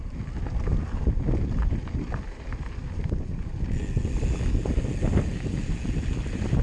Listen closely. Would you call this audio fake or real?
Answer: real